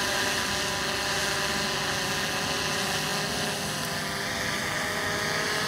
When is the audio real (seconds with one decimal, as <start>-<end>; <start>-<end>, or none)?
0.0-5.7